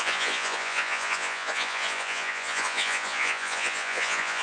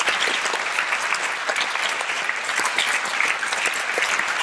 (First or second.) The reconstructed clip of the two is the first